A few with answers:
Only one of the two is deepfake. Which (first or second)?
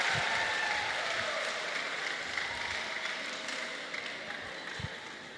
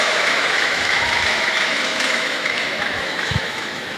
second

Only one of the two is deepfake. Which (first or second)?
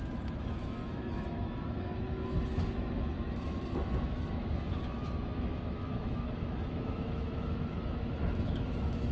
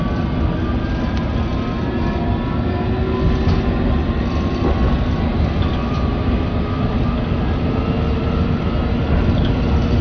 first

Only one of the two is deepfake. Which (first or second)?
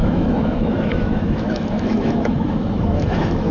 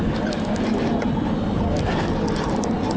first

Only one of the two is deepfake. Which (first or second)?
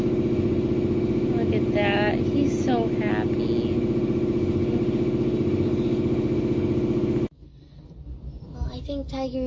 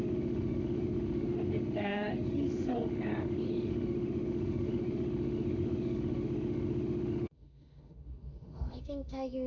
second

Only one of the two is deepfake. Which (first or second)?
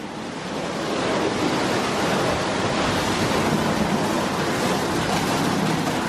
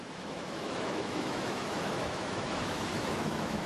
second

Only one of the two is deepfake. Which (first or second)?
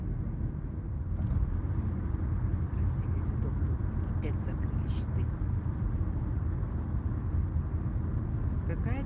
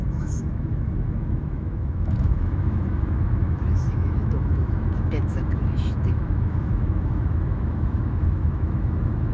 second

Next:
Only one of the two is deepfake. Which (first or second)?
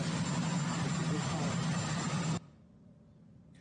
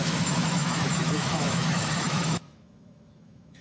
second